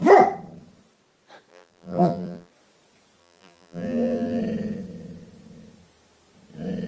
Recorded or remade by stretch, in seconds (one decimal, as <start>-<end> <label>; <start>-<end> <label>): 0.0-1.5 recorded; 1.5-2.5 remade; 2.5-3.2 recorded; 3.2-4.4 remade; 4.4-6.9 recorded